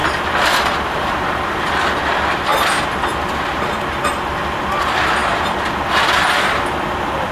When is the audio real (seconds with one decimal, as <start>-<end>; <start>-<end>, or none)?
2.0-7.3